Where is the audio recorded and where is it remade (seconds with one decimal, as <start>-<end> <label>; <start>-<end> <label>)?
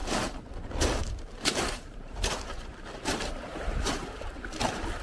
0.0-0.6 recorded; 0.6-5.0 remade